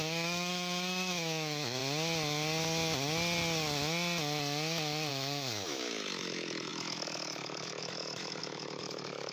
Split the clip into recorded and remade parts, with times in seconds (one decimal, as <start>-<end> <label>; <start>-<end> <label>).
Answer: 0.0-1.8 remade; 1.8-5.1 recorded; 5.1-9.3 remade